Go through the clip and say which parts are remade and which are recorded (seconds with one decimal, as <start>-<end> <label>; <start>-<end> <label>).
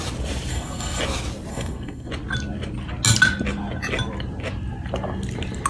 0.0-0.5 recorded; 0.5-1.0 remade; 1.0-1.5 recorded; 1.5-2.1 remade; 2.1-5.7 recorded